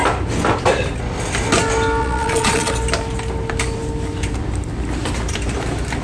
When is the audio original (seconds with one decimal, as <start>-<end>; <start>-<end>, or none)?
0.0-2.0; 2.7-6.0